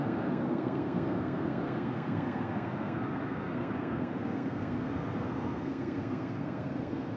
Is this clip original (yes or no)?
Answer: no